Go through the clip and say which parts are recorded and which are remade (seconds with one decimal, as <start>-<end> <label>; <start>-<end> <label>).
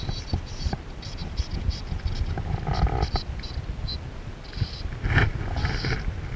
0.0-6.4 recorded